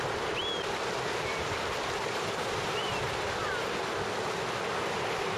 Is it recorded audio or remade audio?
recorded